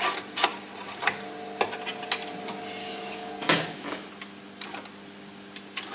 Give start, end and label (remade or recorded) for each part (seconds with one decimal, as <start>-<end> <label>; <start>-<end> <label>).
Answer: 0.0-2.8 recorded; 2.8-4.1 remade; 4.1-5.9 recorded